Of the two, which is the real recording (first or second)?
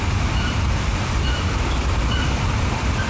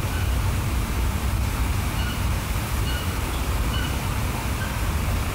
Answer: second